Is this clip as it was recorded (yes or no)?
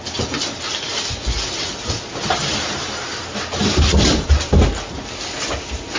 yes